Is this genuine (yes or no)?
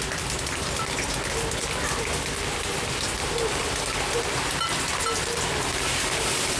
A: yes